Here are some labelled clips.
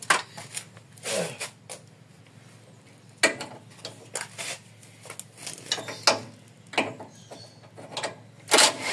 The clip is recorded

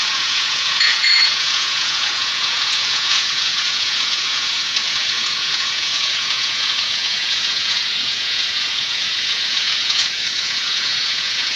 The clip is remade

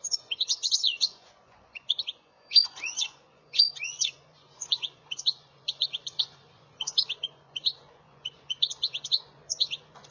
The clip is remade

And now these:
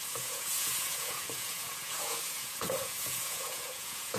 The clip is remade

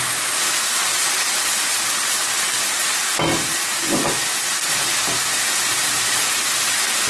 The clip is recorded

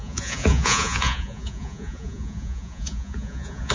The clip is remade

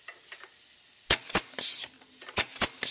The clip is recorded